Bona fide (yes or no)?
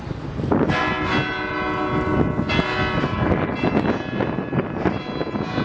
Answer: yes